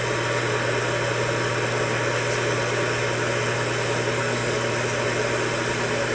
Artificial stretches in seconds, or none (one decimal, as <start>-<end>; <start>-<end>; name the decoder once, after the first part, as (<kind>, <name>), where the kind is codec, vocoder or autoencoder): 4.2-4.7 (codec, DAC)